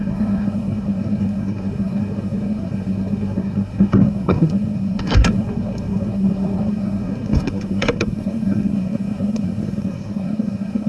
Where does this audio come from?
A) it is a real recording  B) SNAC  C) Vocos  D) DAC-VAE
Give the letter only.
B